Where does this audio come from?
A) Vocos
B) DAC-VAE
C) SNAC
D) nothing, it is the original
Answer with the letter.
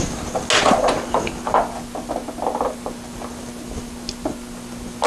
D